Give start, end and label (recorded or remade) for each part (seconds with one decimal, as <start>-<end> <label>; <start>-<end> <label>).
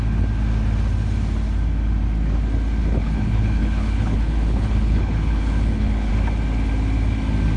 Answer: 0.0-2.8 recorded; 2.8-6.1 remade; 6.1-7.6 recorded